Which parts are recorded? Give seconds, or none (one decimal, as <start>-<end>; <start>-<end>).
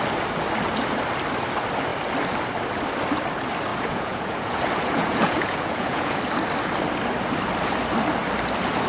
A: 0.0-3.7; 6.2-8.9